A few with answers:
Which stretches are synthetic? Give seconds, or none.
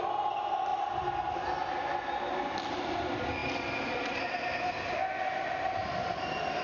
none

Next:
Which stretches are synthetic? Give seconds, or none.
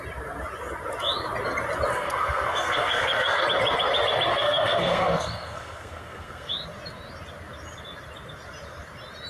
1.9-3.4 (codec, SNAC); 4.3-6.5